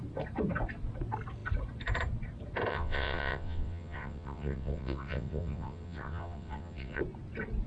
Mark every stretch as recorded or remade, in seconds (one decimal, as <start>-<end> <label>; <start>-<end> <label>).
0.0-2.7 recorded; 2.7-7.0 remade; 7.0-7.7 recorded